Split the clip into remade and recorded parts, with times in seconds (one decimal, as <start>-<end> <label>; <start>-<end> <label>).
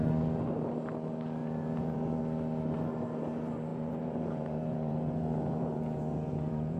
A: 0.0-1.4 recorded; 1.4-2.2 remade; 2.2-3.7 recorded; 3.7-6.8 remade